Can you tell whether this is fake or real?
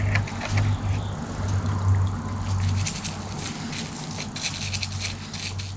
real